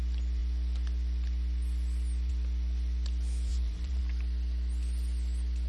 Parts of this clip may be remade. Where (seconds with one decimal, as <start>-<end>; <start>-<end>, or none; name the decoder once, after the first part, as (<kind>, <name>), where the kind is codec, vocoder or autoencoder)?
3.5-4.0 (vocoder, BigVGAN v2)